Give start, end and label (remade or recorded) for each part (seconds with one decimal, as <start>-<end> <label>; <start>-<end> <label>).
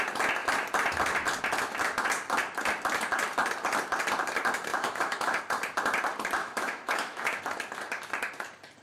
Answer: 0.0-4.7 recorded; 4.7-5.4 remade; 5.4-6.4 recorded; 6.4-7.4 remade; 7.4-8.8 recorded